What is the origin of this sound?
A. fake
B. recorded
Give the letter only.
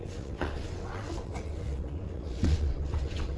A